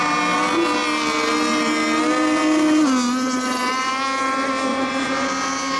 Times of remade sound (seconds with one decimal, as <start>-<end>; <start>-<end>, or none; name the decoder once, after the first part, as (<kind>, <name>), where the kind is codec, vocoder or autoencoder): 4.7-5.3 (vocoder, Vocos)